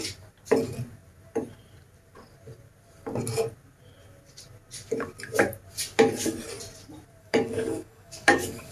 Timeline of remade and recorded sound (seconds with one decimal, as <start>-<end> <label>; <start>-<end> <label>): 0.0-7.2 recorded; 7.2-8.7 remade